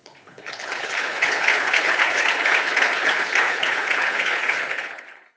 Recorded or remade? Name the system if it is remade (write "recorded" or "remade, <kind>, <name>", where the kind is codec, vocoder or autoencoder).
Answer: remade, codec, HILCodec